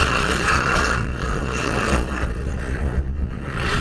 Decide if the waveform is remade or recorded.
remade